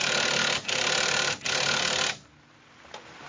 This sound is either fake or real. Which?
real